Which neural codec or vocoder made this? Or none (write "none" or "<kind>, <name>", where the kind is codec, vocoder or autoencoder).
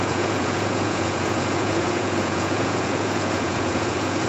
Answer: vocoder, Vocos